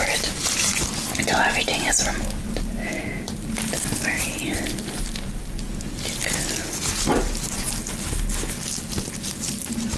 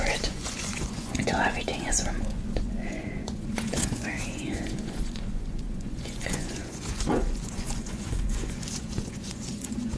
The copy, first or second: second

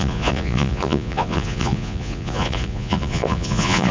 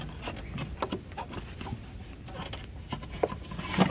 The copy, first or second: first